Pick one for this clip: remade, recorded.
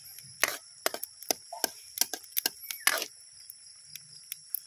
recorded